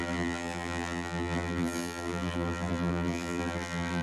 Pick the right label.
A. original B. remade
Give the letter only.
B